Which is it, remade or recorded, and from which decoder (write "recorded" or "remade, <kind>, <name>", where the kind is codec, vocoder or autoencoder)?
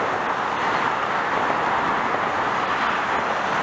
recorded